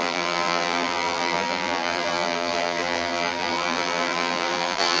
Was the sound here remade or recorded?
remade